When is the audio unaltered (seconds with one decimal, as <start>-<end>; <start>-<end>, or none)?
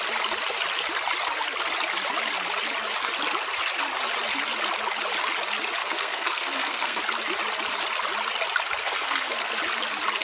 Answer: 0.0-5.8; 7.0-8.8; 9.5-10.2